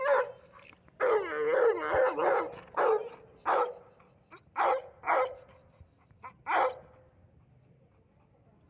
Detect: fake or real real